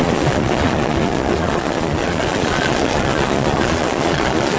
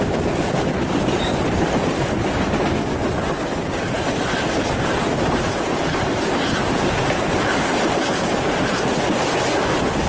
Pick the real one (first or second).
second